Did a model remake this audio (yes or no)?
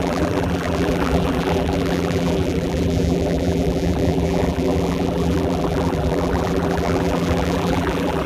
yes